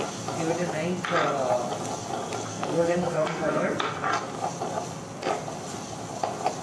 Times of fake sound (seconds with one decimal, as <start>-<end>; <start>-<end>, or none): 2.5-4.1